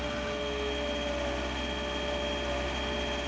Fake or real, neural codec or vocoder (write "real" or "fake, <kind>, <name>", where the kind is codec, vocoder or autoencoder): real